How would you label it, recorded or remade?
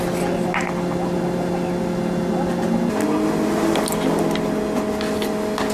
recorded